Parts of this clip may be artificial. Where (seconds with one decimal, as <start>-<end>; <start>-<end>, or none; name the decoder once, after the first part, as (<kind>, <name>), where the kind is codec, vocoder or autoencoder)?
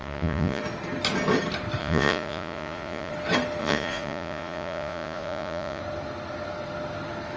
0.0-0.6 (vocoder, Vocos); 1.8-3.1; 3.6-5.8